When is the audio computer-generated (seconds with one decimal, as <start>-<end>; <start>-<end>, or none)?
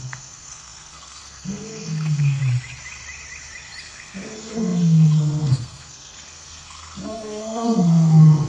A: 0.0-2.4; 3.8-8.5